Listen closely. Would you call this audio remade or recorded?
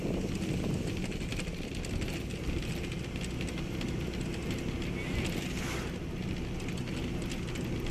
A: recorded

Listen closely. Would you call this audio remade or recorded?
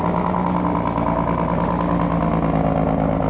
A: recorded